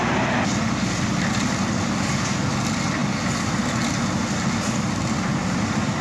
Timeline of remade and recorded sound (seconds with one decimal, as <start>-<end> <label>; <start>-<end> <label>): 0.0-6.0 recorded